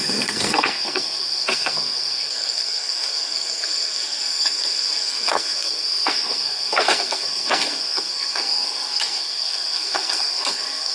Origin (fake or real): fake